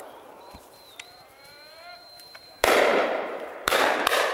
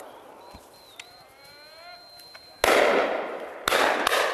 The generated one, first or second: first